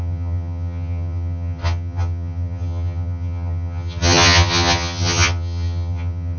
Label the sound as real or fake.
fake